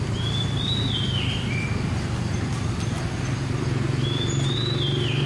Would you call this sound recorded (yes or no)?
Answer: yes